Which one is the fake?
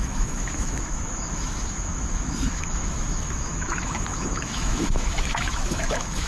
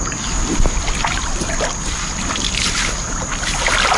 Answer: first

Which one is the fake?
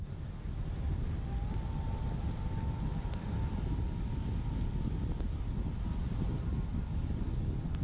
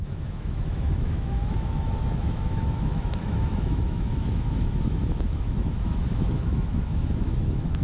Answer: second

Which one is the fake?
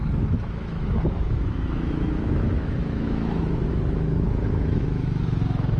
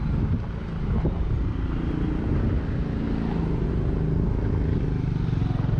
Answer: first